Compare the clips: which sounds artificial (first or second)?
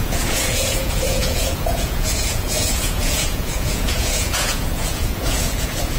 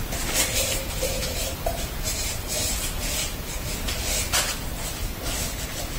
first